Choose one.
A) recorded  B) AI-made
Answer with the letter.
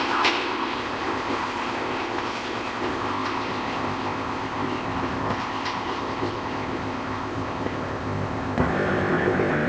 B